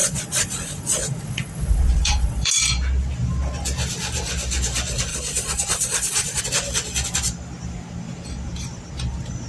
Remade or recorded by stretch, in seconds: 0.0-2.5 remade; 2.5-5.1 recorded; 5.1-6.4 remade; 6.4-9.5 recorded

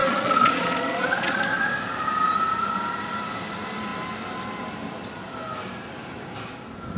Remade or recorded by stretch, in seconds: 0.0-1.4 remade; 1.4-7.0 recorded

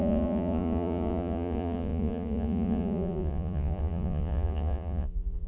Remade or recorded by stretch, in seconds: 0.0-5.5 remade

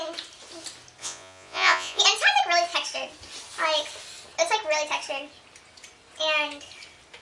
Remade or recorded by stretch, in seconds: 0.0-1.0 recorded; 1.0-2.0 remade; 2.0-7.2 recorded